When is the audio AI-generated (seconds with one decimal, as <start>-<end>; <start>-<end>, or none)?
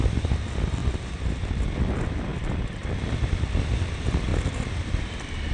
0.8-1.4; 2.3-3.7; 4.3-5.5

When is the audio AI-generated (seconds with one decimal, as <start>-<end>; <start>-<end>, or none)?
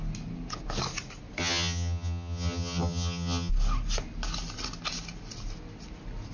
1.4-3.5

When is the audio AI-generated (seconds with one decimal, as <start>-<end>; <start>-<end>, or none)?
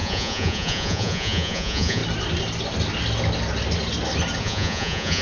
0.0-2.0; 4.4-5.2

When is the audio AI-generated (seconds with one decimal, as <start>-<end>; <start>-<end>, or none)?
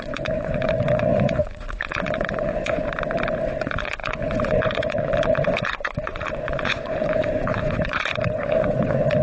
0.0-2.8; 3.6-9.2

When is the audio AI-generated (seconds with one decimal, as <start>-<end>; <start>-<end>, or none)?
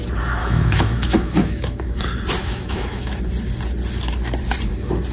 0.4-2.0; 2.4-3.1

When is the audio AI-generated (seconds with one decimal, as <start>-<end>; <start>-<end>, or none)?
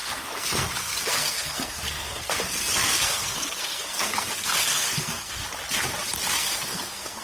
0.0-5.4; 6.3-7.2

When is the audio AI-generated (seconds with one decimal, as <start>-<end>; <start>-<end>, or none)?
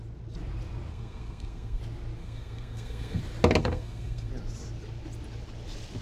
0.9-1.8; 2.2-3.2; 3.6-4.3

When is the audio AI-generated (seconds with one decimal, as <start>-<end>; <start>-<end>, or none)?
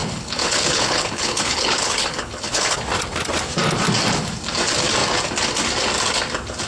0.0-2.8